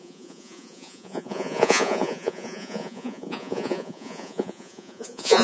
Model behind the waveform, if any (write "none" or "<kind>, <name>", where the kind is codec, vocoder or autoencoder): vocoder, Vocos